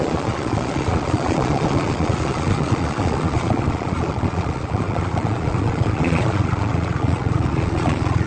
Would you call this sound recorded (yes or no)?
no